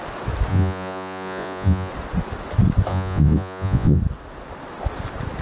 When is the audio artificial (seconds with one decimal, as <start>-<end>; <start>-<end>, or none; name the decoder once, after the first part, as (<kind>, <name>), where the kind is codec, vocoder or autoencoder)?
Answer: 0.5-1.9 (vocoder, Vocos); 2.9-4.0